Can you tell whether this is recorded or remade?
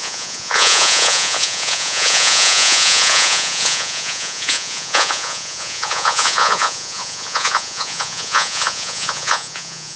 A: remade